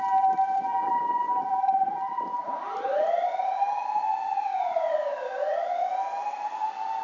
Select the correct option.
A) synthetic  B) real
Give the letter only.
A